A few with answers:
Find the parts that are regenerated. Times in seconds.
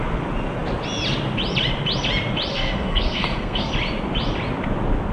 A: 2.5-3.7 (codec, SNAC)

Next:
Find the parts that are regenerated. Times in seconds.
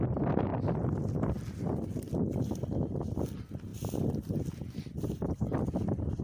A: none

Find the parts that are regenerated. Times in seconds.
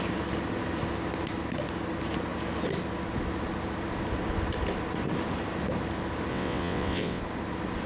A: 6.3-7.2 (vocoder, WaveNeXt)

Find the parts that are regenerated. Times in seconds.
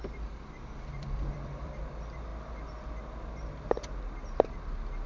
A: 0.0-1.8 (vocoder, BigVGAN v2)